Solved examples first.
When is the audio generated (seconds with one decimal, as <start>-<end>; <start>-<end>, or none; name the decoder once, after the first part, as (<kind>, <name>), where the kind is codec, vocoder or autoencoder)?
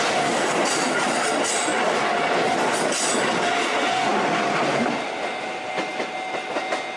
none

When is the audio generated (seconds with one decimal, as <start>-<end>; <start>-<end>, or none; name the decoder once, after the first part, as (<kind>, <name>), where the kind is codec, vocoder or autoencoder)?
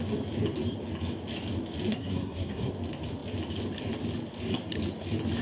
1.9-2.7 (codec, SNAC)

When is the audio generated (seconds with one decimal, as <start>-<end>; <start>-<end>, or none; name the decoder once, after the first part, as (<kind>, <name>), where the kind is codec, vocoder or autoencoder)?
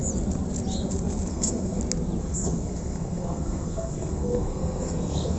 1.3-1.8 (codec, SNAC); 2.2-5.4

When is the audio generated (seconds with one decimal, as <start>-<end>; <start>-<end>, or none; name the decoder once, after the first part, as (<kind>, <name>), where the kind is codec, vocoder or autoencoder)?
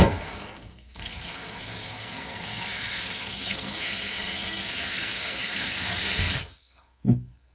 0.0-7.5 (codec, SNAC)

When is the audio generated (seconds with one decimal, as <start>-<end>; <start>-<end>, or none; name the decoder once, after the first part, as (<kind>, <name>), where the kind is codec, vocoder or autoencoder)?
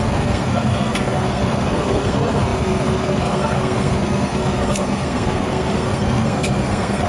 0.0-7.1 (codec, SNAC)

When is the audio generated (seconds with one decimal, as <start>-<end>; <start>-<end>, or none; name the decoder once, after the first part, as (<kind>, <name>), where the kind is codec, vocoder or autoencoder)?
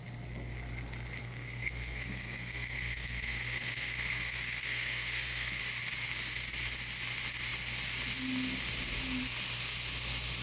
1.2-5.6 (codec, SNAC)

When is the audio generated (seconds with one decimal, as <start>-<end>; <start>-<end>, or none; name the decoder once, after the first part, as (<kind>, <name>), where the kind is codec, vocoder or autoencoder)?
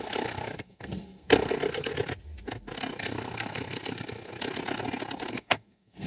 0.0-1.9 (codec, SNAC); 3.0-4.3; 5.3-6.1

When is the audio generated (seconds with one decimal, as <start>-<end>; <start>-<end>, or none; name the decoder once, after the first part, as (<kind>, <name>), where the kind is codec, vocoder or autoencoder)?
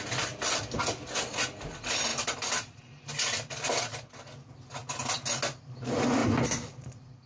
none